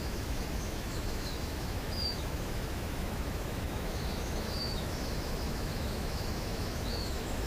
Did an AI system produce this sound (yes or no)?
yes